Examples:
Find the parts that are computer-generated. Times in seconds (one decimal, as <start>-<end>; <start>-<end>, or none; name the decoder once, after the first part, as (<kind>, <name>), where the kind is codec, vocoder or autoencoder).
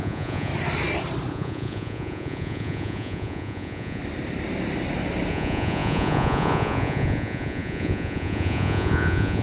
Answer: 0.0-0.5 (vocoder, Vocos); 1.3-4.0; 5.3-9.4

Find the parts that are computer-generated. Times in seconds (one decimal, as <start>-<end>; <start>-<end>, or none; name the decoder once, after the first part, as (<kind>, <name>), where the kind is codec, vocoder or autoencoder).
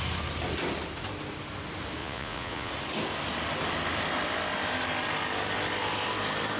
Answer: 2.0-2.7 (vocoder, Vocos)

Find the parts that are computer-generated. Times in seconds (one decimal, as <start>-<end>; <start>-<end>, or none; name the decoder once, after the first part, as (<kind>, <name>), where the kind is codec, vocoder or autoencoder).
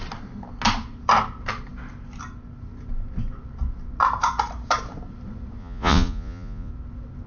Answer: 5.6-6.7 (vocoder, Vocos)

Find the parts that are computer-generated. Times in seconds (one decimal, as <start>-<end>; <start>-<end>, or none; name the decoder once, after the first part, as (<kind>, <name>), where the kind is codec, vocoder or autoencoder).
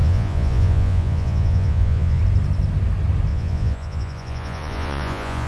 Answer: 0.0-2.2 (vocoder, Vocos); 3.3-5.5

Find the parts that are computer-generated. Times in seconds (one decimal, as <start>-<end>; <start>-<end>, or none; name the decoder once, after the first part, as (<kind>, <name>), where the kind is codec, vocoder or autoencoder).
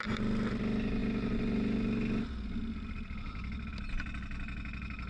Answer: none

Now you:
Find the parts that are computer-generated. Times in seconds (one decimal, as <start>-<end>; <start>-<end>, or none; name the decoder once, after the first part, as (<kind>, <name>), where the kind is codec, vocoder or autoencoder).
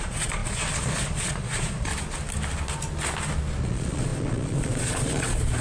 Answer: 0.0-1.9 (vocoder, Vocos); 3.6-5.6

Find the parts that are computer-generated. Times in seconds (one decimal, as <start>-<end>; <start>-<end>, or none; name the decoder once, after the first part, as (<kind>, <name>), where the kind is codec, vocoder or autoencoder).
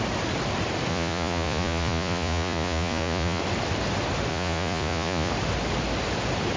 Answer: 0.9-3.4 (vocoder, Vocos); 4.3-5.3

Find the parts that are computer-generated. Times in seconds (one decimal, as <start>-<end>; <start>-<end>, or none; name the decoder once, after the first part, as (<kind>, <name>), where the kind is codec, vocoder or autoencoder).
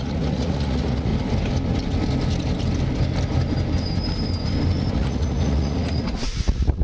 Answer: 0.0-1.1 (vocoder, Vocos); 4.9-6.8